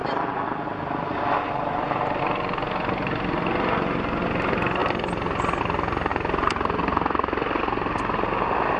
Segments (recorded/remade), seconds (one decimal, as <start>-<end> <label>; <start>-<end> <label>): 0.0-2.2 remade; 2.2-6.1 recorded; 6.1-7.6 remade; 7.6-8.8 recorded